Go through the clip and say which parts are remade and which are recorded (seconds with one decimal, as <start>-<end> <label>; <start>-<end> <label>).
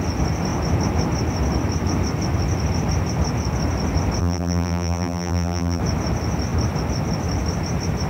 0.0-4.2 recorded; 4.2-5.8 remade; 5.8-8.1 recorded